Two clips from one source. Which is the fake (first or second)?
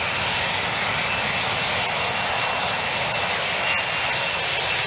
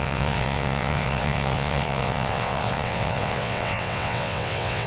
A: second